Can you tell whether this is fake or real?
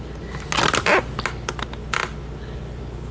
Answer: real